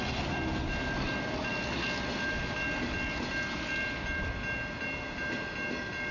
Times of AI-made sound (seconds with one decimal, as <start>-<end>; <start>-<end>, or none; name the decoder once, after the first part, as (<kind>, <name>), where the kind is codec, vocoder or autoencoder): none